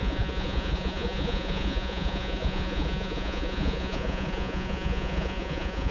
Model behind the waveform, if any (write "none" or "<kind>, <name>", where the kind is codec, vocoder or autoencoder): vocoder, Vocos